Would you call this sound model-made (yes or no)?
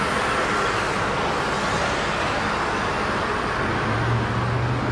no